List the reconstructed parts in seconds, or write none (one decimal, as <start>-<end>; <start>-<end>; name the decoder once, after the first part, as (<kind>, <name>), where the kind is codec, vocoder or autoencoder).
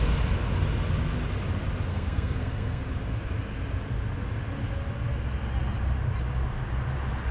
1.9-2.8 (codec, SNAC)